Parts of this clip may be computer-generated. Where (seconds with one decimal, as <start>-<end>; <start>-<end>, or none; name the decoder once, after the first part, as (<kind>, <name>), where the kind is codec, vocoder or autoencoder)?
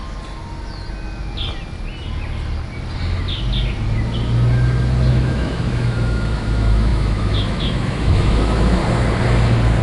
5.1-8.8 (autoencoder, DAC-VAE)